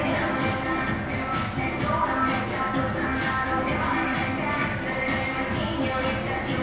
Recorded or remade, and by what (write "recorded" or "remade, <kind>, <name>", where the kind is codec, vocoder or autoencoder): recorded